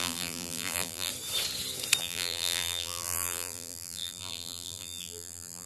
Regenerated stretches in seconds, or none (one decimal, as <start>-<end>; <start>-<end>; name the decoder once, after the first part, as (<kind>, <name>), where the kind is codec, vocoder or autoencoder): 0.0-1.1 (vocoder, BigVGAN v2); 2.0-5.7